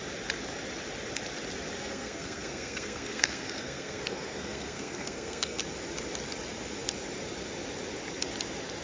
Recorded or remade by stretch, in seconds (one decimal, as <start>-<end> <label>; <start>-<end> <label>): 0.0-1.8 recorded; 1.8-5.6 remade; 5.6-8.8 recorded